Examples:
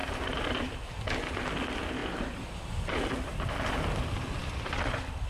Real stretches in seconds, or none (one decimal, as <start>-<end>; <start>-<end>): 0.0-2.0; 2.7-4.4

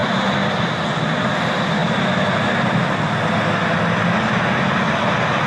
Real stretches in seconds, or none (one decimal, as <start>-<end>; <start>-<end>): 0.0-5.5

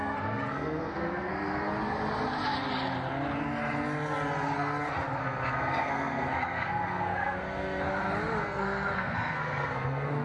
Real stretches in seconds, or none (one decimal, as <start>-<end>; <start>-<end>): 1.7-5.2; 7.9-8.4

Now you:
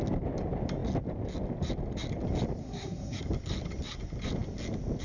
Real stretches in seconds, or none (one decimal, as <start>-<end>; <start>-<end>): 0.0-2.6; 3.2-5.0